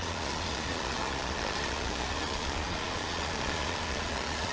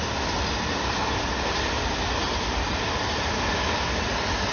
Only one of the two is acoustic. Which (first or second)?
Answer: second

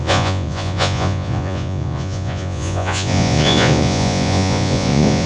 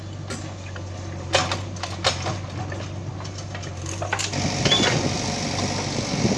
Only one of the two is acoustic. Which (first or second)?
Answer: second